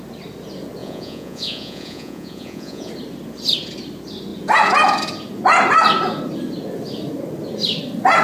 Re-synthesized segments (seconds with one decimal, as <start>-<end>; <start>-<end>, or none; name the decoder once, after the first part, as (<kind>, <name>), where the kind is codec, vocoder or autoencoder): 0.8-2.9 (vocoder, Vocos)